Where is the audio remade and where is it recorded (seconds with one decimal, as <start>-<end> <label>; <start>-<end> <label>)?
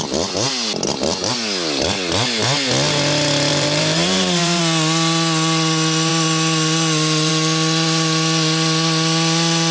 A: 0.0-3.5 recorded; 3.5-4.6 remade; 4.6-9.7 recorded